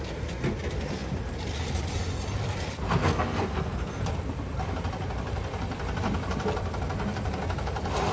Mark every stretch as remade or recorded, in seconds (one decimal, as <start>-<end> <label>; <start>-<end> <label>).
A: 0.0-3.0 recorded; 3.0-4.0 remade; 4.0-8.1 recorded